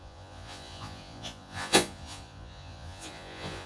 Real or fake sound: fake